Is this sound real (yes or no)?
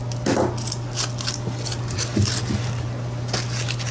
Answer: yes